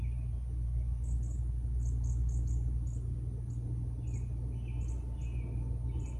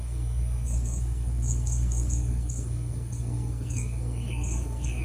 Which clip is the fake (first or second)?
second